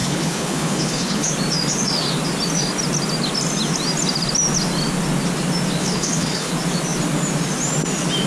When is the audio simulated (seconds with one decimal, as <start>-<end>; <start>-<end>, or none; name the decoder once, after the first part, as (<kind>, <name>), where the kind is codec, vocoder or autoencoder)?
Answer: 0.0-1.3 (codec, HILCodec); 5.8-6.5